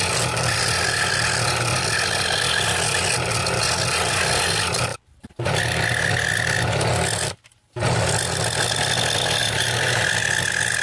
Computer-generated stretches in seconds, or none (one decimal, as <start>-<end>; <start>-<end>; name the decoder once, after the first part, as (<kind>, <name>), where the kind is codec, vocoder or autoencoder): 4.9-5.5 (vocoder, BigVGAN v2); 9.4-10.1